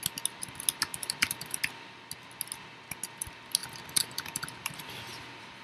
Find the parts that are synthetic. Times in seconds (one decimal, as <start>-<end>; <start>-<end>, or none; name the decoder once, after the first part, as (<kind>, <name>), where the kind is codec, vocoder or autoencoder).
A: 0.9-1.6 (vocoder, BigVGAN v2); 3.6-5.0